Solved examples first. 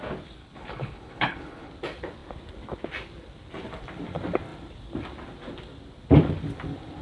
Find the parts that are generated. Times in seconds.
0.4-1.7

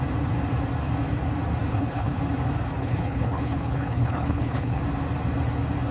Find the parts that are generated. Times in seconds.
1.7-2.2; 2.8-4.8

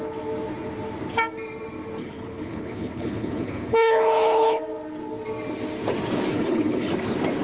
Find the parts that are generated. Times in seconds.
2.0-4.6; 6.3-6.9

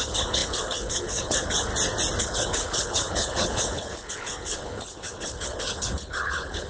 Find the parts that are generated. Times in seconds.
0.0-1.7; 2.2-6.7